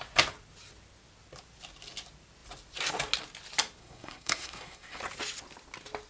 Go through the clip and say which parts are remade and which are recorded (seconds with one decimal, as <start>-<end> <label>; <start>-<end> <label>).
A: 0.0-3.8 recorded; 3.8-5.0 remade; 5.0-6.1 recorded